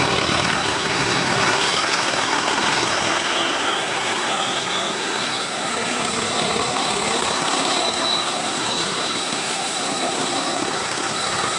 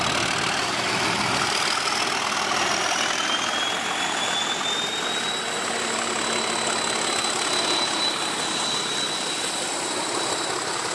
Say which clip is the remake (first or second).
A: first